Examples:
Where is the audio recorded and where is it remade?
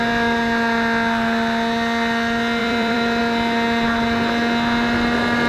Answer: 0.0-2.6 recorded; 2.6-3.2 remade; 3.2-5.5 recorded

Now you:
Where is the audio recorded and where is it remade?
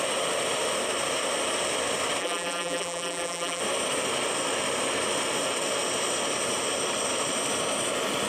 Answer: 0.0-2.2 recorded; 2.2-3.6 remade; 3.6-8.3 recorded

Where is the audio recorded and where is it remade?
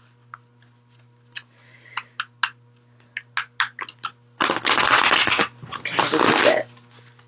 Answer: 0.0-7.3 recorded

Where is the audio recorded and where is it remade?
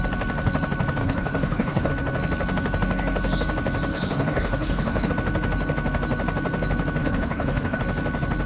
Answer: 0.0-1.0 recorded; 1.0-1.9 remade; 1.9-3.9 recorded; 3.9-5.1 remade; 5.1-7.0 recorded; 7.0-7.8 remade; 7.8-8.5 recorded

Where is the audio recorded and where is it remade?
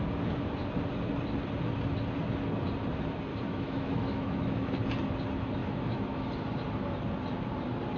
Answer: 0.0-3.3 recorded; 3.3-4.7 remade; 4.7-5.6 recorded; 5.6-6.2 remade; 6.2-8.0 recorded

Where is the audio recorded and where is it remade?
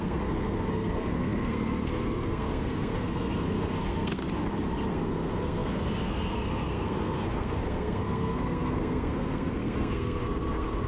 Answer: 0.0-4.2 remade; 4.2-4.9 recorded; 4.9-10.9 remade